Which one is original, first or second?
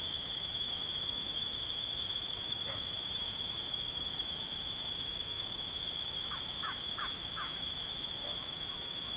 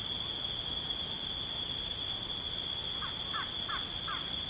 second